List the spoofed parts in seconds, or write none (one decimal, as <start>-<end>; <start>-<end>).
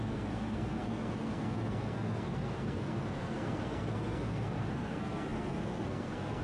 0.0-6.4